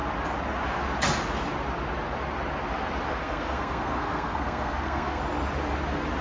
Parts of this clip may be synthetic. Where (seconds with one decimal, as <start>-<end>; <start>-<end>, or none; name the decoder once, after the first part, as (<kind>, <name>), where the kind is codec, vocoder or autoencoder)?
3.1-5.2 (codec, SNAC)